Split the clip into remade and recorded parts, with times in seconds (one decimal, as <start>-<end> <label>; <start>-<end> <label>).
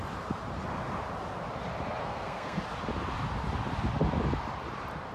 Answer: 0.0-2.0 recorded; 2.0-2.6 remade; 2.6-5.1 recorded